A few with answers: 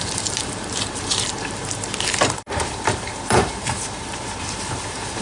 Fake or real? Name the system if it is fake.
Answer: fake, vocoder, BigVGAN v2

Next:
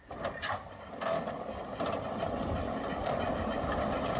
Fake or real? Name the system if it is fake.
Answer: fake, vocoder, BigVGAN v2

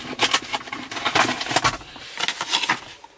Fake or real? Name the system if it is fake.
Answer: real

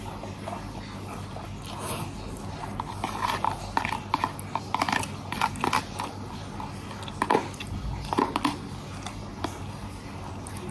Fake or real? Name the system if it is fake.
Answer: real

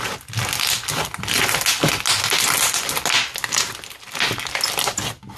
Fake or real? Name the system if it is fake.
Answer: real